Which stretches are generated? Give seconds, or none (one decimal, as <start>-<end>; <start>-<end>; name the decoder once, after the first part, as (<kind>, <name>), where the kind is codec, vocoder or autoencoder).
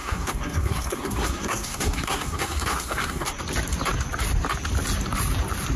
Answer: 0.0-3.4 (codec, SNAC)